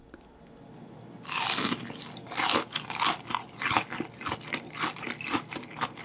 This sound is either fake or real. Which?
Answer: real